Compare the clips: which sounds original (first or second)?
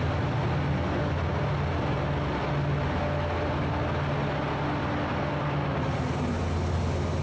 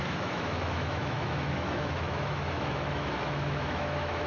first